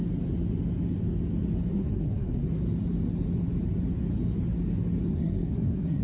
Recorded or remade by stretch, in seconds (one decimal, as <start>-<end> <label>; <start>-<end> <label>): 0.0-1.7 recorded; 1.7-2.6 remade; 2.6-5.1 recorded; 5.1-6.0 remade